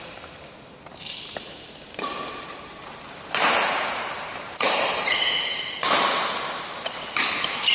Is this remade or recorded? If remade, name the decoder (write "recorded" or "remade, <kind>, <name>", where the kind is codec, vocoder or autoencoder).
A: remade, vocoder, BigVGAN v2